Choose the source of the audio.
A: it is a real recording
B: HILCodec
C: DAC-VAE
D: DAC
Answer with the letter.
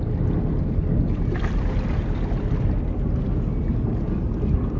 A